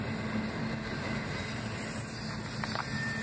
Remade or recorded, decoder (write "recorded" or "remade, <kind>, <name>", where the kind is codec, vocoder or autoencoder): recorded